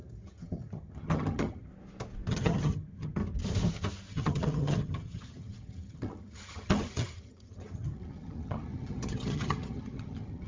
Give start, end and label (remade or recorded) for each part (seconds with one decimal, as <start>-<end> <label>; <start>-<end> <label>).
0.0-1.7 remade; 1.7-2.3 recorded; 2.3-3.2 remade; 3.2-4.1 recorded; 4.1-10.5 remade